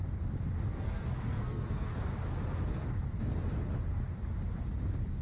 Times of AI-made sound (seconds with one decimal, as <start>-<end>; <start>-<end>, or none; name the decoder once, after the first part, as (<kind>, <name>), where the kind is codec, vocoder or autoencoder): 0.6-1.9 (codec, SNAC)